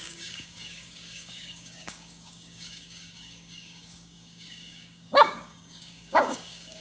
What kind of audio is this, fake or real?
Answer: fake